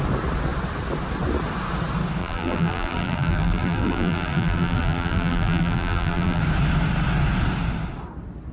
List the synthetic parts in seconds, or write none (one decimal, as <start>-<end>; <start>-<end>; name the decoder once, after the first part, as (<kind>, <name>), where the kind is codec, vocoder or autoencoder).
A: 2.2-6.4 (vocoder, BigVGAN v2)